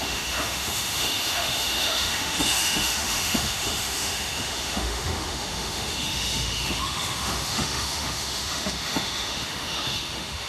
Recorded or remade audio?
remade